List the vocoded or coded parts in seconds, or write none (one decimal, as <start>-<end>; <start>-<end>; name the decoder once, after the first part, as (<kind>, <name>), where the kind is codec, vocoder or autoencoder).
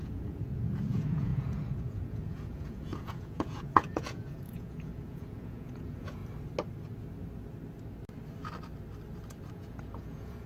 0.0-6.2 (vocoder, Vocos); 9.5-10.5